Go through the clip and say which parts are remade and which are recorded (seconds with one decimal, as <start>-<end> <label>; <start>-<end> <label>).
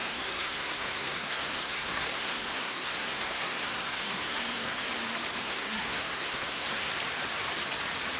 0.0-4.9 remade; 4.9-5.4 recorded; 5.4-6.9 remade; 6.9-8.2 recorded